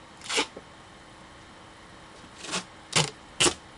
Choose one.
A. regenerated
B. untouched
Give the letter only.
B